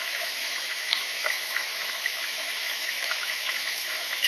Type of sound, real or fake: fake